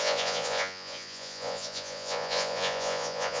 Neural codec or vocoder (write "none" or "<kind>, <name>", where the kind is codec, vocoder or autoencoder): vocoder, Vocos